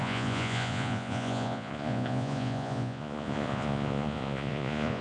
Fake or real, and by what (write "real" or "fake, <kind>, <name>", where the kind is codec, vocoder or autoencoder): fake, vocoder, Vocos